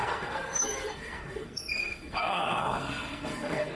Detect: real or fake fake